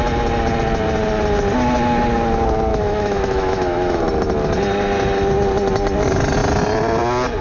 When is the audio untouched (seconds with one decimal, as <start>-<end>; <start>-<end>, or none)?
0.0-2.7; 4.0-7.4